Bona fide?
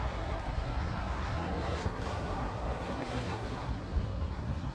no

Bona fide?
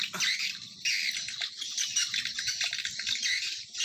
yes